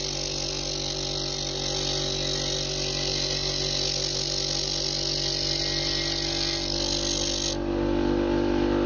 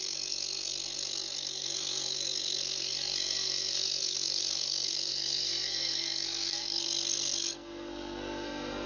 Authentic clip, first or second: first